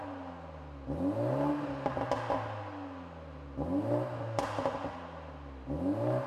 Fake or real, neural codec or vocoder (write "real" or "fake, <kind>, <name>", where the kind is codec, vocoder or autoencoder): real